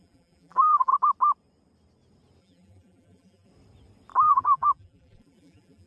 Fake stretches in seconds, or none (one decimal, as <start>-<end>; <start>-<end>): 0.0-0.9; 2.4-3.5; 4.3-5.9